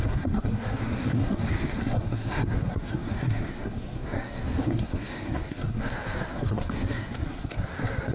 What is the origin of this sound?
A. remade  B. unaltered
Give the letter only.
A